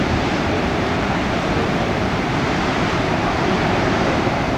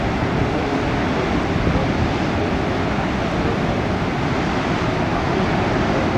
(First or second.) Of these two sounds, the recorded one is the second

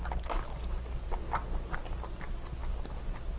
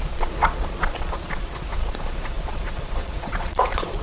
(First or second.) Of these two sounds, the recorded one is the first